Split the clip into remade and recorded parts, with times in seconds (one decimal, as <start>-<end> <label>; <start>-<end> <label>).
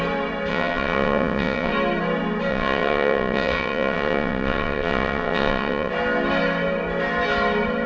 0.0-0.5 recorded; 0.5-1.7 remade; 1.7-2.5 recorded; 2.5-5.9 remade; 5.9-7.9 recorded